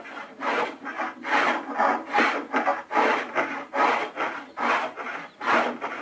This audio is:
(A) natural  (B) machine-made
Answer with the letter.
A